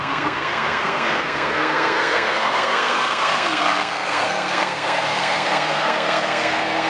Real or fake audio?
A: fake